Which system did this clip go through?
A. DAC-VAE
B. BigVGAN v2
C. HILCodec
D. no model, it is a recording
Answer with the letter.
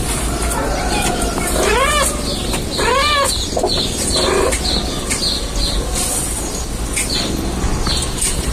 D